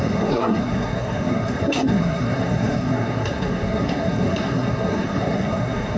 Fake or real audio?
fake